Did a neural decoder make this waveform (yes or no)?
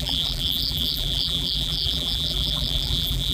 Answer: yes